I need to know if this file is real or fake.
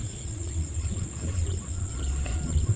fake